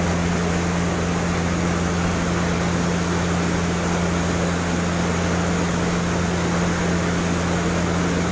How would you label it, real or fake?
real